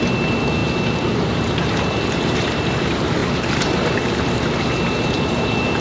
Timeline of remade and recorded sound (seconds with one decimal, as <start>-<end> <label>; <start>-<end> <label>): 0.0-5.8 remade